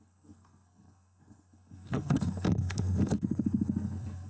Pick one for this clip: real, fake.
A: fake